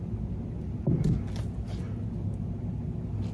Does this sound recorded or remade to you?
recorded